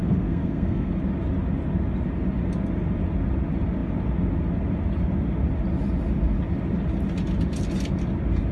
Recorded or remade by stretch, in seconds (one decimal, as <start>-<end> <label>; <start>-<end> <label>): 0.0-0.9 remade; 0.9-8.5 recorded